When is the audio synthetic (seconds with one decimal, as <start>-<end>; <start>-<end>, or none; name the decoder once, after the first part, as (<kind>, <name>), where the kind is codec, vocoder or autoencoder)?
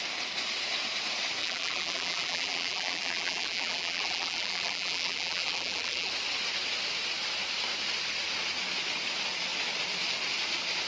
1.4-6.1 (vocoder, BigVGAN v2)